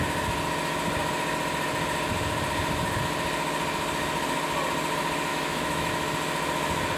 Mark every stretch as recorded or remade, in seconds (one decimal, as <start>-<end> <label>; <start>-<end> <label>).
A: 0.0-5.3 recorded; 5.3-5.9 remade; 5.9-7.0 recorded